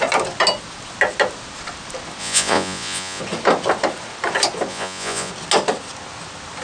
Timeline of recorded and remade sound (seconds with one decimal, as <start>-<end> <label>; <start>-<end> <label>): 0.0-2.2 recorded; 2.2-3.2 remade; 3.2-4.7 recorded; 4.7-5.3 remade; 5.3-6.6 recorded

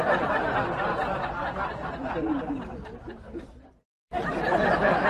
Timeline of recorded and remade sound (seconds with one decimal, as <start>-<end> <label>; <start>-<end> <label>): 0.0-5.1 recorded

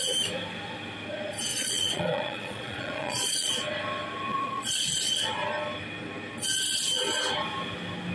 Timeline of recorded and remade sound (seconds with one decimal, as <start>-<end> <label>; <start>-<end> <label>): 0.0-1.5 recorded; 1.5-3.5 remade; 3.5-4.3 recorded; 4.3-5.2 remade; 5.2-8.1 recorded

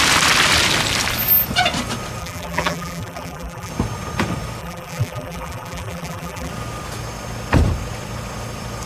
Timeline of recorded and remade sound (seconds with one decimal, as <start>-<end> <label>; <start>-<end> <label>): 0.0-2.2 recorded; 2.2-3.7 remade; 3.7-4.6 recorded; 4.6-6.5 remade; 6.5-8.9 recorded

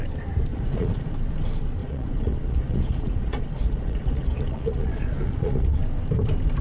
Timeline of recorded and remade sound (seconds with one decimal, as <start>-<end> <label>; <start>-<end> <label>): 0.0-0.5 recorded; 0.5-1.1 remade; 1.1-1.8 recorded; 1.8-5.8 remade; 5.8-6.6 recorded

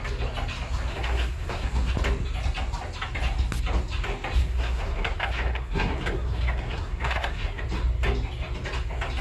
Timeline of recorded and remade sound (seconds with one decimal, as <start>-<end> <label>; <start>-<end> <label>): 0.0-0.9 recorded; 0.9-1.9 remade; 1.9-4.4 recorded; 4.4-7.6 remade; 7.6-9.2 recorded